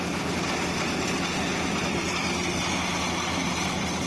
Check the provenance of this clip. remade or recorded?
recorded